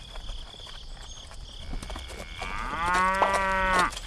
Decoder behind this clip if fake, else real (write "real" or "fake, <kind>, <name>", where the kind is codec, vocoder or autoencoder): real